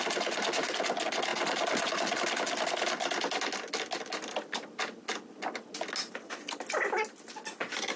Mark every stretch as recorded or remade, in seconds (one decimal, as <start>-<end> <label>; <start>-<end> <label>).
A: 0.0-8.0 recorded